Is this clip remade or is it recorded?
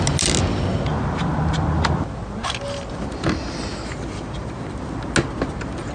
recorded